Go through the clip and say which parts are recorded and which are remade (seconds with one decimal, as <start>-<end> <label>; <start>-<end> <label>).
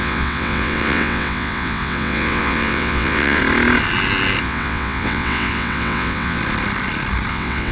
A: 0.0-3.4 remade; 3.4-4.4 recorded; 4.4-6.4 remade; 6.4-7.3 recorded; 7.3-7.7 remade